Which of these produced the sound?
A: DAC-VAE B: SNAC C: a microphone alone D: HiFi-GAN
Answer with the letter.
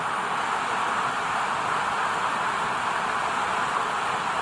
C